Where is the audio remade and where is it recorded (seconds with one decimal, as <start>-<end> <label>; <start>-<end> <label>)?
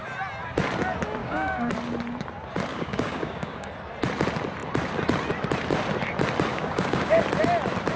0.0-1.2 recorded; 1.2-1.7 remade; 1.7-2.7 recorded; 2.7-3.7 remade; 3.7-6.5 recorded; 6.5-7.2 remade; 7.2-8.0 recorded